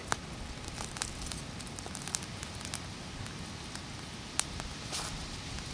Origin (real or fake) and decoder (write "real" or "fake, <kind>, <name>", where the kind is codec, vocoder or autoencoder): real